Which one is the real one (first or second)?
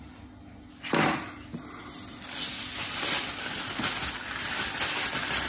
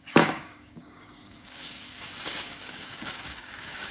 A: first